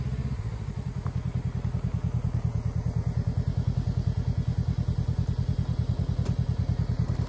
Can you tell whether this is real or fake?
real